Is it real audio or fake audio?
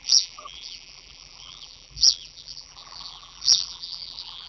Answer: fake